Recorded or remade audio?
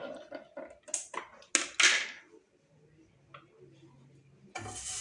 recorded